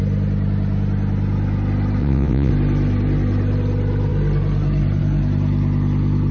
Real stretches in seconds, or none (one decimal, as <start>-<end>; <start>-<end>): 0.0-2.0; 2.5-6.3